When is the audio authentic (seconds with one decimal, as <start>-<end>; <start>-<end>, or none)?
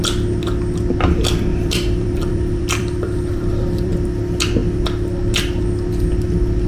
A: 0.0-1.5; 3.9-6.7